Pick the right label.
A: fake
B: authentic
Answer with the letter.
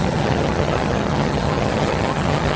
A